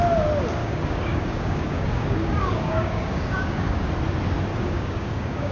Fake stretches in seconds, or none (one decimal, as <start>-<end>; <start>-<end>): 0.6-3.9; 4.5-5.5